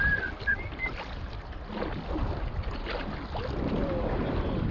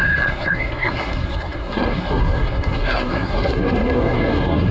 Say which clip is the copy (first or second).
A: second